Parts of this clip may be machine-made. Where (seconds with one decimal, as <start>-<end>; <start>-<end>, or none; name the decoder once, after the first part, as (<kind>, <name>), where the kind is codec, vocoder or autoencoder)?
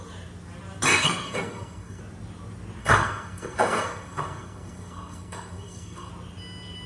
0.9-2.0 (codec, SNAC); 2.8-6.1